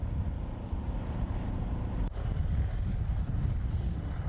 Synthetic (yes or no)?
no